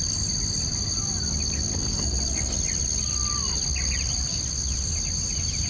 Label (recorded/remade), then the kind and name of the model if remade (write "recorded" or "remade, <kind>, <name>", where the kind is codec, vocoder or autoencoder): recorded